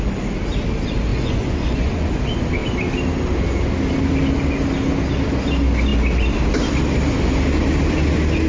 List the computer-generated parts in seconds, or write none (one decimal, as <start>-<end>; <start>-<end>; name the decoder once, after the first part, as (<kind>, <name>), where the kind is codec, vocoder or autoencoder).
1.1-2.2 (vocoder, Vocos)